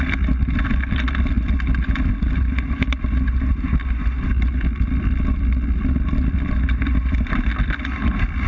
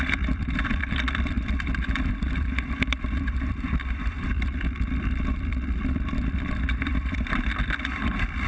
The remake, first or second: second